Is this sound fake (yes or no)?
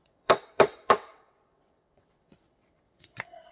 yes